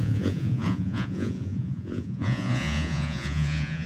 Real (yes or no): no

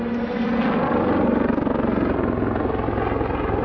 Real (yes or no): yes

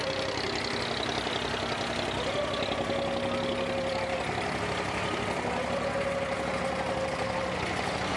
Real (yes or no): yes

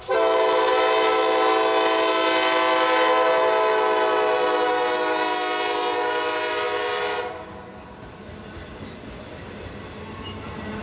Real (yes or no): yes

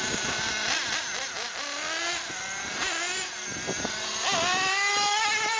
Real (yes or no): yes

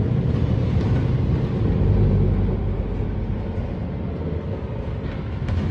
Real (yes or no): yes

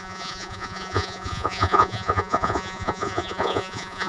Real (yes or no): no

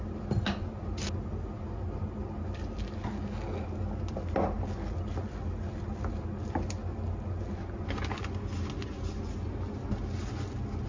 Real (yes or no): yes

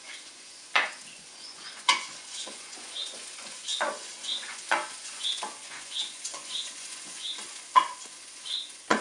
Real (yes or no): no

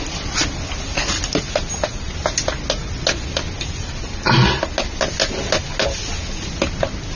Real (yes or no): yes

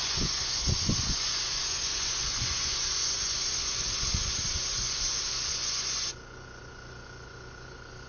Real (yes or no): no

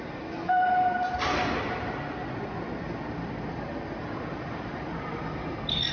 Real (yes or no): yes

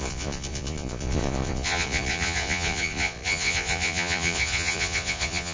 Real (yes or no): no